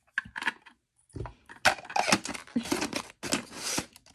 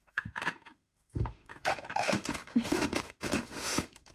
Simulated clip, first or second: second